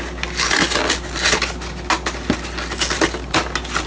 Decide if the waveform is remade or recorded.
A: recorded